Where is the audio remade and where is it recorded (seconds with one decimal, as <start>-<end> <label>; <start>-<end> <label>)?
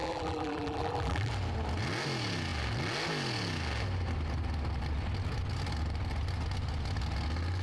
0.0-1.3 remade; 1.3-7.6 recorded